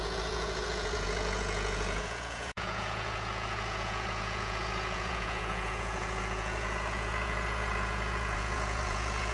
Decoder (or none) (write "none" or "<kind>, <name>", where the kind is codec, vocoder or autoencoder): vocoder, Vocos